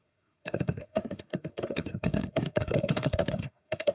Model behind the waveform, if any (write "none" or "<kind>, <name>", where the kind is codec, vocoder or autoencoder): codec, SNAC